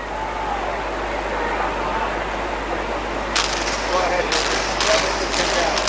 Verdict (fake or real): real